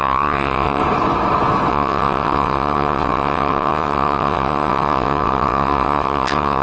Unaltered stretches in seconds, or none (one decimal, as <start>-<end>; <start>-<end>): 0.8-1.7